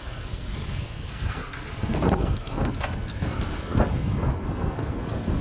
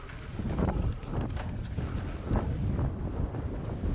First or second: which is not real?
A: first